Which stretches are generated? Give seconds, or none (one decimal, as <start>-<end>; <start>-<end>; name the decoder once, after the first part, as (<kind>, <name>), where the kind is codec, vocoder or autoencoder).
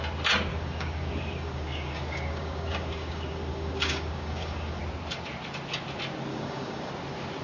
0.5-4.8 (codec, DAC); 6.3-6.9